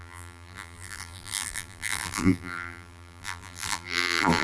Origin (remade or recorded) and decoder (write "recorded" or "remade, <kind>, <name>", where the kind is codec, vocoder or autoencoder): remade, vocoder, BigVGAN v2